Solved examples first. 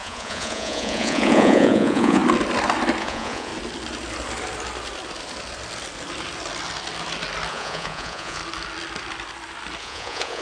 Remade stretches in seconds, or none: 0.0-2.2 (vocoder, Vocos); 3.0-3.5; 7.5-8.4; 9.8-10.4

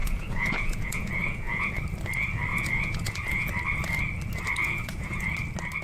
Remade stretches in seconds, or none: 0.0-1.7 (vocoder, Vocos); 2.5-3.5; 4.6-5.3

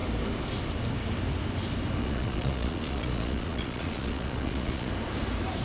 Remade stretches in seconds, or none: 2.0-4.9 (vocoder, Vocos)

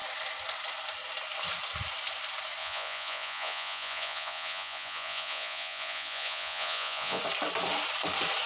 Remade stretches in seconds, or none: 2.6-7.2 (vocoder, Vocos)